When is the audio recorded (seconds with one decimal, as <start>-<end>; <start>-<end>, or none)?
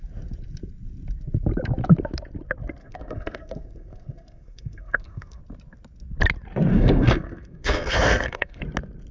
0.0-2.8; 5.4-6.7; 8.6-9.1